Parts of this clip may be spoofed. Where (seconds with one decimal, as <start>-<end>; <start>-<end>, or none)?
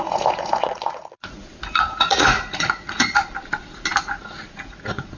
0.0-3.2; 4.0-5.2